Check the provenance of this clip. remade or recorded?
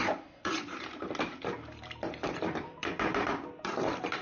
remade